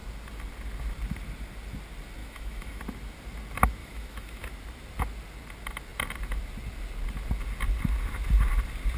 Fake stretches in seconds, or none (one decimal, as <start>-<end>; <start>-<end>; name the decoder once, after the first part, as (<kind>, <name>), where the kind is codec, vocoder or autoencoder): 2.2-2.8 (autoencoder, DAC-VAE); 3.8-4.5